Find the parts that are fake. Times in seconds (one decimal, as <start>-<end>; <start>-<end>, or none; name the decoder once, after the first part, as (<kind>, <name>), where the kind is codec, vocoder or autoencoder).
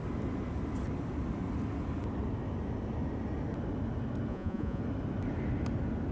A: 4.3-4.8 (vocoder, Vocos)